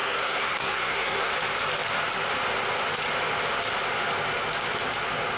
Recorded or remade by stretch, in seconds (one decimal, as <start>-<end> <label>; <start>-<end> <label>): 0.0-1.3 remade; 1.3-5.4 recorded